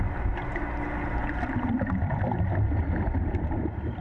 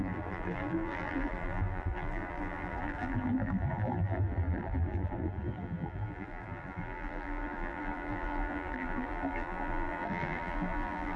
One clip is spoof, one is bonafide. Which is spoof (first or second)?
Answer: second